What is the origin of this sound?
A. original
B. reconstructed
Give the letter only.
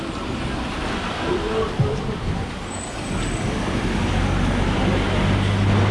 A